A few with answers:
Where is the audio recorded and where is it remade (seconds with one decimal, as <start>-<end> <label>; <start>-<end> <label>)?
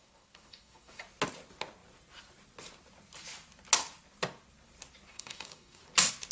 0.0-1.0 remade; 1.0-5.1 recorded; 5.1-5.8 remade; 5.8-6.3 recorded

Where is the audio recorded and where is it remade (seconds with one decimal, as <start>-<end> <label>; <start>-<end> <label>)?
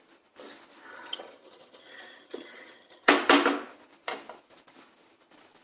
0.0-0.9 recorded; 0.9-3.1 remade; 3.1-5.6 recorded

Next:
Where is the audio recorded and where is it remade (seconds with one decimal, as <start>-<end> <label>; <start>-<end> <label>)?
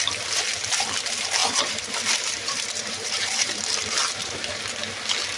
0.0-1.4 recorded; 1.4-4.6 remade; 4.6-5.4 recorded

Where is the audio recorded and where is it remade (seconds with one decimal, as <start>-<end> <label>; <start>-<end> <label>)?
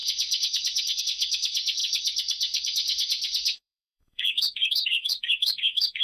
0.0-6.0 remade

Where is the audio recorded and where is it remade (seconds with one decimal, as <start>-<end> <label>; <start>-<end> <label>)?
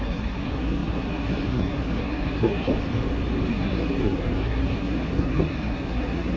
0.0-2.7 remade; 2.7-3.5 recorded; 3.5-6.4 remade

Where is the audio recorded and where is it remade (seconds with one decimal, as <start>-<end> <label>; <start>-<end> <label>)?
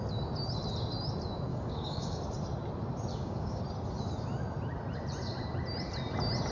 0.0-1.5 recorded; 1.5-2.2 remade; 2.2-3.1 recorded; 3.1-3.6 remade; 3.6-6.5 recorded